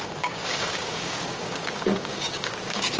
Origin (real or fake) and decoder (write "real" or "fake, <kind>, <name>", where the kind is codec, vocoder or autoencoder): fake, codec, DAC